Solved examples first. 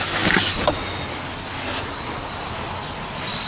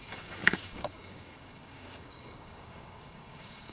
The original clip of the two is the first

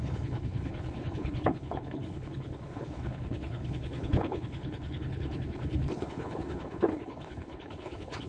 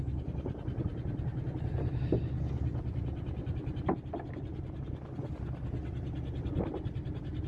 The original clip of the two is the second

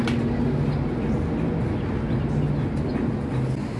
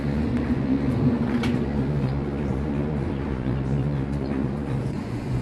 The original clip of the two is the first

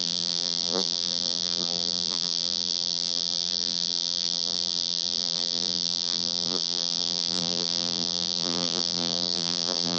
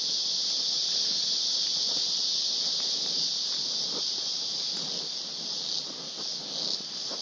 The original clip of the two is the second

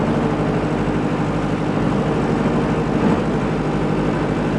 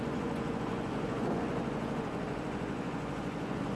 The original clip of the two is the first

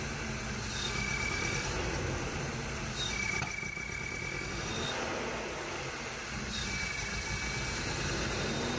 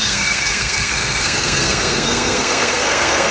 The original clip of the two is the first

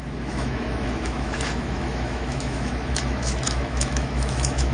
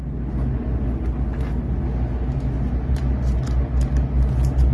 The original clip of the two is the second